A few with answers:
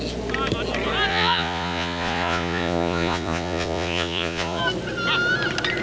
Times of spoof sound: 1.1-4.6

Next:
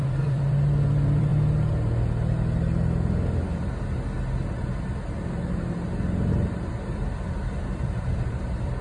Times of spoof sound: 0.0-1.3; 6.3-8.8

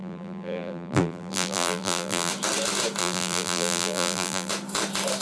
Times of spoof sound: 0.0-2.3; 3.0-4.5

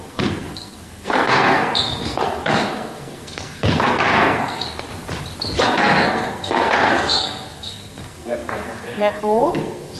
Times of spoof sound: 0.0-4.9; 5.6-10.0

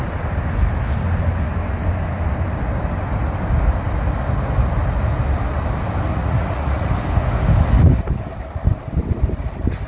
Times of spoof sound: 6.1-6.9

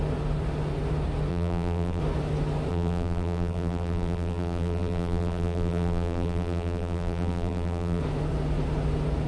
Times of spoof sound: 1.3-2.0; 2.7-8.0